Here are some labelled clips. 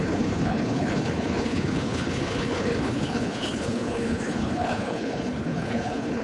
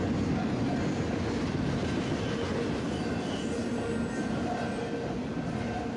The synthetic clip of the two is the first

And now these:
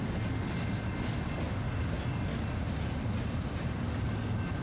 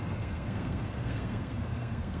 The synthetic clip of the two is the second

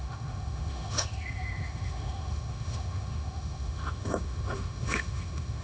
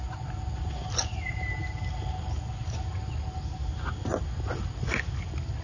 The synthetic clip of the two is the first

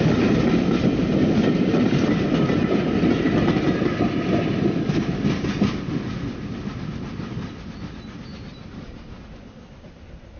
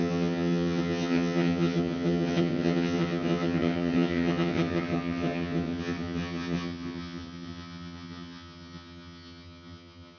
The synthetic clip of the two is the second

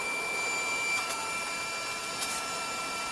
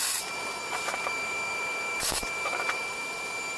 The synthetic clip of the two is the second